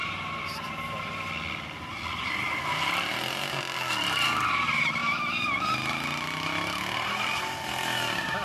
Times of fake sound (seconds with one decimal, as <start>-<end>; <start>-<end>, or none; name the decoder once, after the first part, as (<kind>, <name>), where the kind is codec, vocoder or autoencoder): 0.0-0.7 (vocoder, BigVGAN v2); 5.0-5.7